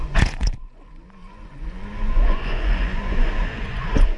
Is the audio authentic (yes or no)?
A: no